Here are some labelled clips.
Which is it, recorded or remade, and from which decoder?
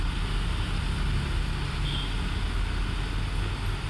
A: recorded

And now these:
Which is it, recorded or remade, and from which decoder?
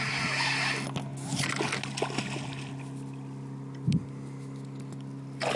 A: recorded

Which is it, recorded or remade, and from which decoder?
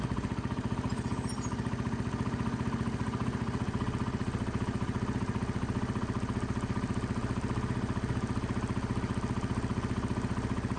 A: recorded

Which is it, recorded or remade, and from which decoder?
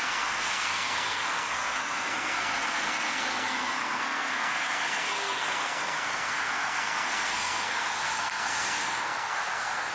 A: remade, codec, SNAC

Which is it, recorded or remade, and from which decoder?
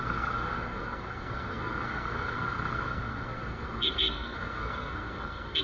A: remade, codec, SNAC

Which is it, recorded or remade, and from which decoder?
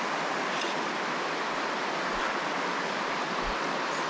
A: recorded